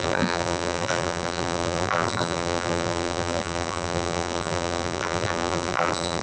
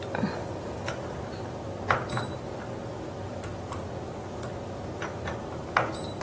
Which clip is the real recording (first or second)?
second